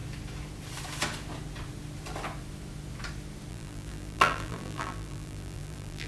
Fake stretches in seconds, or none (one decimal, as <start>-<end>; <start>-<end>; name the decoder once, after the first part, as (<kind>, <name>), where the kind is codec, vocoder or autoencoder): 3.5-6.1 (vocoder, BigVGAN v2)